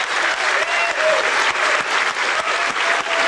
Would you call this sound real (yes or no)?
yes